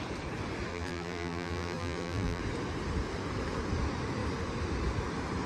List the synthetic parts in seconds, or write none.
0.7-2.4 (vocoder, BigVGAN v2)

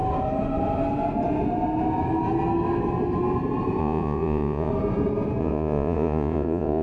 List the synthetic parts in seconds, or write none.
3.8-4.7 (vocoder, Vocos); 5.4-6.8

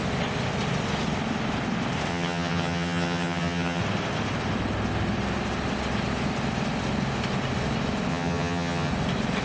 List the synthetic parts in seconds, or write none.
2.1-3.8 (vocoder, HiFi-GAN); 8.1-8.9

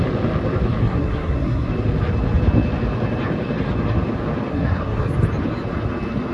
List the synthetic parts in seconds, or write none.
0.8-1.7 (codec, SNAC); 4.5-5.1